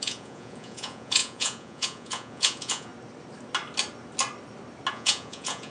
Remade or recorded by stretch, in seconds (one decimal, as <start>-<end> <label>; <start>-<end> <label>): 0.0-2.9 remade; 2.9-4.9 recorded; 4.9-5.7 remade